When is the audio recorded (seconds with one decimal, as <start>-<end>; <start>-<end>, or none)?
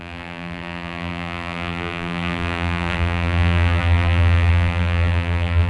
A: none